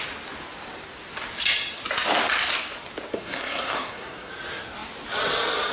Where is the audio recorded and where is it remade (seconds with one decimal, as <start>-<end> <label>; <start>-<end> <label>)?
0.0-3.1 recorded; 3.1-4.3 remade; 4.3-5.7 recorded

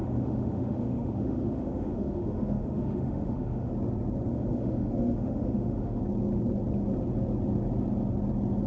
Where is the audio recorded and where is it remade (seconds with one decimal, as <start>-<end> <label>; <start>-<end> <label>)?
0.0-3.7 remade; 3.7-4.3 recorded; 4.3-6.0 remade; 6.0-8.7 recorded

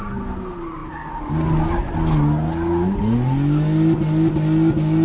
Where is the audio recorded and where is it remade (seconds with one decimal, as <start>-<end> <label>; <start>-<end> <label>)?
0.0-5.0 recorded

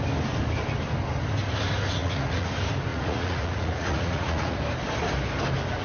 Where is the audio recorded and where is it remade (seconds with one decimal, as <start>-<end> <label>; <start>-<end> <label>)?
0.0-2.0 recorded; 2.0-2.5 remade; 2.5-2.9 recorded; 2.9-4.6 remade; 4.6-5.8 recorded